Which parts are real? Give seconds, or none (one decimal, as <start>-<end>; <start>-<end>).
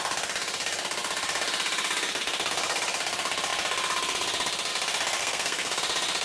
0.0-5.2; 5.8-6.2